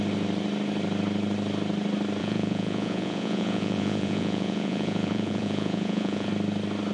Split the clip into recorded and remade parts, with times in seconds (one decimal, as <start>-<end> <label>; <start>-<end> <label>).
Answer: 0.0-2.2 recorded; 2.2-6.3 remade; 6.3-6.9 recorded